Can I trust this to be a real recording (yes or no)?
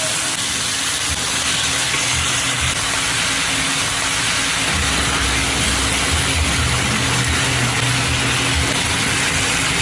yes